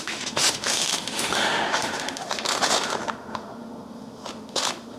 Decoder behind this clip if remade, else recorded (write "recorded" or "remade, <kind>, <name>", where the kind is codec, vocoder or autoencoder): remade, autoencoder, DAC-VAE